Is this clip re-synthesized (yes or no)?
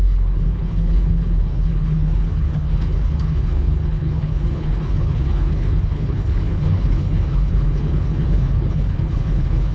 yes